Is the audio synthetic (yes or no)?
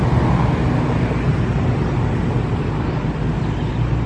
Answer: no